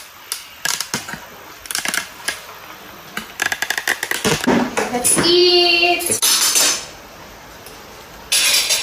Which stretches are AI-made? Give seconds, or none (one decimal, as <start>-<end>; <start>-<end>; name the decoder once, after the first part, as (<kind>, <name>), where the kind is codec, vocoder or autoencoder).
none